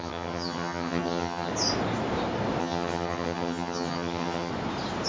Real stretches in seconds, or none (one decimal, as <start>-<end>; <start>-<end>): 1.5-2.6; 4.5-5.1